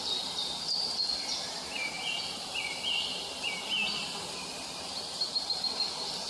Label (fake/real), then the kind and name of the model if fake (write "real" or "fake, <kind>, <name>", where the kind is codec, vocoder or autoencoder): fake, vocoder, BigVGAN v2